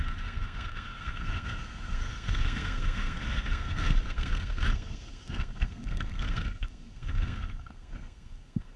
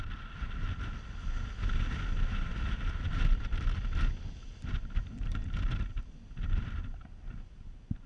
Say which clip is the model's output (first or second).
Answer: first